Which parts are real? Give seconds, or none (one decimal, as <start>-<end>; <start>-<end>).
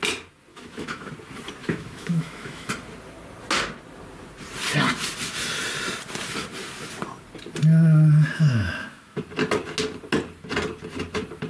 0.0-0.5; 1.1-1.6; 2.7-8.3; 9.2-11.5